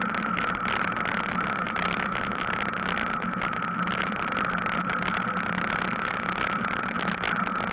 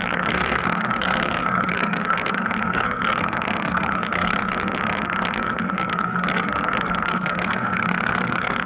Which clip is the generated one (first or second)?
second